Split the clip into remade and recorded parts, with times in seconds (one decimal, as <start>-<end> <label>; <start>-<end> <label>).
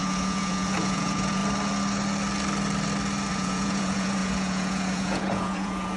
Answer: 0.0-1.4 remade; 1.4-3.3 recorded; 3.3-6.0 remade